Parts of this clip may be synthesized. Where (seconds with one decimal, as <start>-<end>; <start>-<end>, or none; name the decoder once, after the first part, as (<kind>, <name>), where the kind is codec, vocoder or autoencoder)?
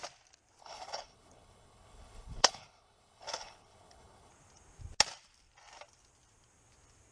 0.6-4.3 (codec, HILCodec)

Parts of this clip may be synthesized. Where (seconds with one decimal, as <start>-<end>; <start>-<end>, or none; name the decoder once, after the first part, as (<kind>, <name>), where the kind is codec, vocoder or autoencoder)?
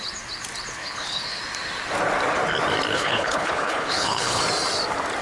0.8-1.4 (codec, HILCodec); 2.9-4.4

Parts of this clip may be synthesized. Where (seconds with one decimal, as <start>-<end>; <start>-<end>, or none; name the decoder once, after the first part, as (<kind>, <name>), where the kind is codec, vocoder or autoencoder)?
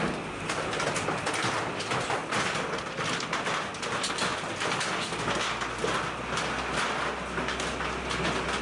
none